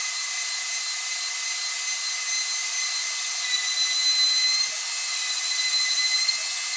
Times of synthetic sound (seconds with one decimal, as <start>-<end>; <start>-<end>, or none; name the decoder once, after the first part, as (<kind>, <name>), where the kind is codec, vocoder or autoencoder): 2.6-3.1 (vocoder, BigVGAN v2); 5.1-6.3